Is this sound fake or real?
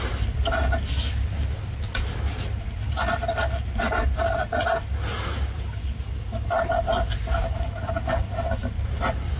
real